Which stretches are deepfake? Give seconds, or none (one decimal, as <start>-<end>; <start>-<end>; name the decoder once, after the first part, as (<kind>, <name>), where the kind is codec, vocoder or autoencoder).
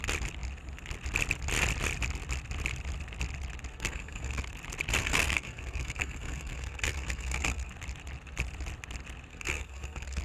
3.7-4.4 (codec, SNAC); 5.0-7.7; 9.3-10.2